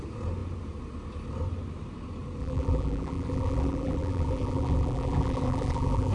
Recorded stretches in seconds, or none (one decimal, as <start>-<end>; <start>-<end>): 0.0-2.4